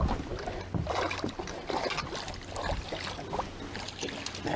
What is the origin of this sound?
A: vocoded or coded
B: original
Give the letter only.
B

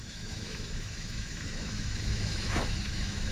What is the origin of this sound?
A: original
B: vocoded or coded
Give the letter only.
B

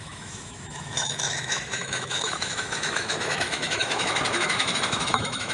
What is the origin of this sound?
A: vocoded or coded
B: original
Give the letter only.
A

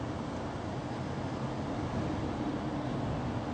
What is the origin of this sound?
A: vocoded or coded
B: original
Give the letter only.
B